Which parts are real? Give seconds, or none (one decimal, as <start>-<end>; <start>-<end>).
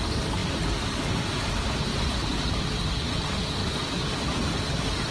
0.0-0.4; 1.0-1.9; 2.6-3.6; 4.3-5.1